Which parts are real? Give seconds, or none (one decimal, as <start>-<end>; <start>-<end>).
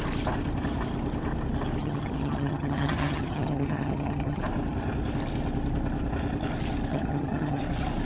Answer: 0.0-1.8; 4.4-6.9; 7.6-8.1